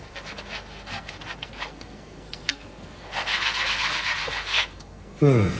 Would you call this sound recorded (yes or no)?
no